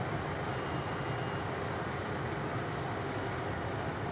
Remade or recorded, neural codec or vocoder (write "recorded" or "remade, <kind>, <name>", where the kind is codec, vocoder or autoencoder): recorded